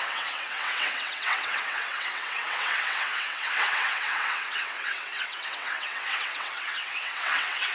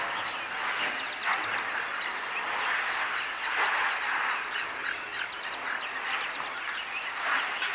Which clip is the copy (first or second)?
first